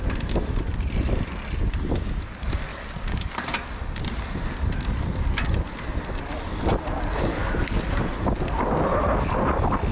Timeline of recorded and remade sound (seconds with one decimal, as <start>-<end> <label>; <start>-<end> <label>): 0.0-2.7 recorded; 2.7-3.3 remade; 3.3-7.4 recorded; 7.4-8.2 remade; 8.2-9.9 recorded